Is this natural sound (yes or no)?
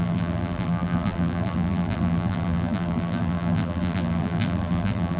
no